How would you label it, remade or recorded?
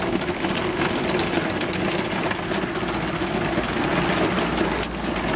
recorded